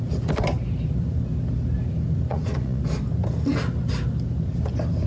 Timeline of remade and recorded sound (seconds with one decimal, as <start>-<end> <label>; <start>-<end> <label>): 0.0-2.3 recorded; 2.3-2.8 remade; 2.8-5.1 recorded